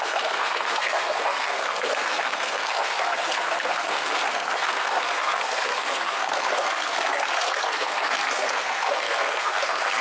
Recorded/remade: remade